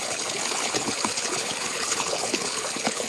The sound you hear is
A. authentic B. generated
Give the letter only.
B